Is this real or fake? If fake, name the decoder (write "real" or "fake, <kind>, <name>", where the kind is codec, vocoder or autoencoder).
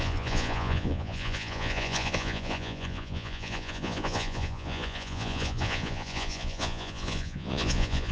fake, vocoder, Vocos